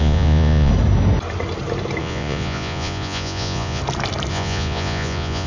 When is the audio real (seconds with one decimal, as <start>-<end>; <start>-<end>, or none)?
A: 0.7-2.0; 3.8-4.3